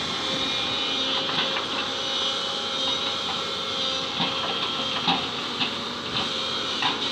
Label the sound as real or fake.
real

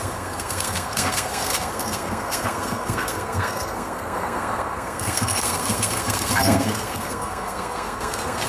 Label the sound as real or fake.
fake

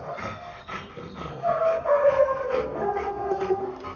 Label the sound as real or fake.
fake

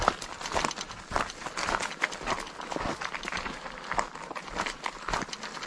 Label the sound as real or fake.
real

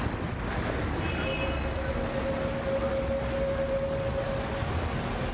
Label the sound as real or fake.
real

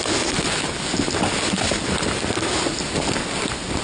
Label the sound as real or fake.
real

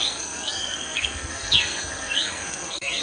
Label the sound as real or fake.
fake